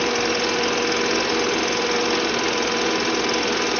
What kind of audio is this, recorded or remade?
recorded